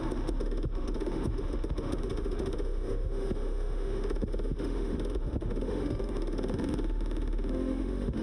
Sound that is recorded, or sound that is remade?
remade